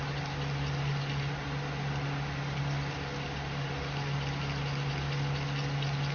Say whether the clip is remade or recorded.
recorded